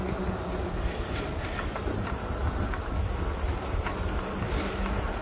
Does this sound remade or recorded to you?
recorded